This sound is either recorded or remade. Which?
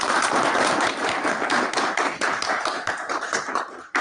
remade